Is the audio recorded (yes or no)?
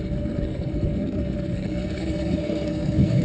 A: no